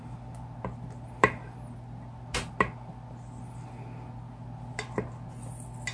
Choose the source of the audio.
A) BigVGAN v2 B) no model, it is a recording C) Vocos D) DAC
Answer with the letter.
B